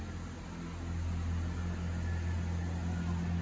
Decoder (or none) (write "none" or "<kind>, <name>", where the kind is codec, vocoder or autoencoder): none